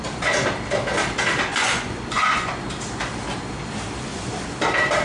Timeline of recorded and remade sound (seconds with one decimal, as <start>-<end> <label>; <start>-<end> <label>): 0.0-1.5 recorded; 1.5-2.5 remade; 2.5-5.0 recorded